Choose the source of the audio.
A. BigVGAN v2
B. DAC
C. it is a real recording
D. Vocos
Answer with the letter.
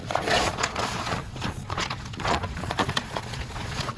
D